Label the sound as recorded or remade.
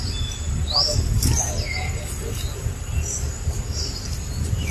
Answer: recorded